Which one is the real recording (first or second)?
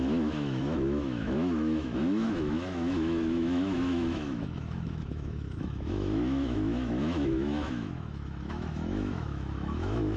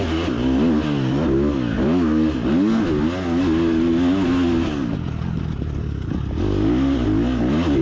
second